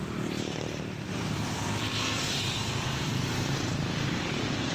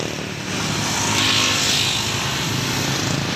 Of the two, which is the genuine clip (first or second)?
second